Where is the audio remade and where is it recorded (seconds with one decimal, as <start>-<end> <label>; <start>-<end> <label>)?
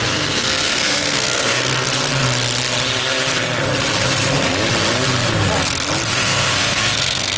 0.0-1.7 remade; 1.7-6.1 recorded; 6.1-7.4 remade